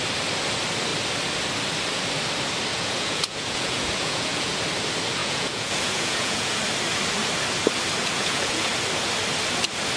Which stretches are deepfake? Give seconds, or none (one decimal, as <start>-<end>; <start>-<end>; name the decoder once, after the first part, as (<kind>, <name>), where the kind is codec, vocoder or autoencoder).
2.7-4.6 (vocoder, Vocos); 5.2-6.5; 8.0-8.7